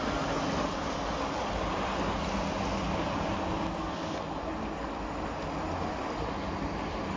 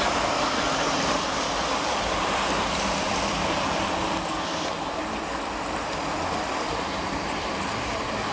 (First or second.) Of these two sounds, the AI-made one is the second